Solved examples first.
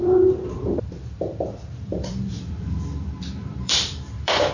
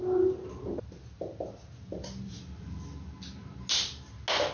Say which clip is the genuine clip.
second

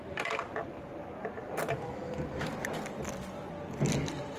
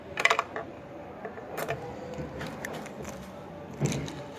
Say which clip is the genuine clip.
first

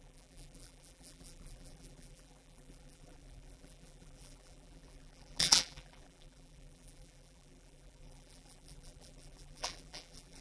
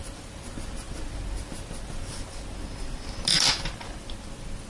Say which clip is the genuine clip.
second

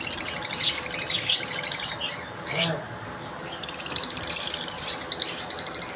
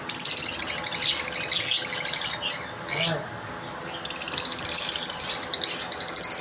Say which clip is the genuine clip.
second